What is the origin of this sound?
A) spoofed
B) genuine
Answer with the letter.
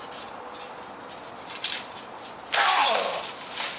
B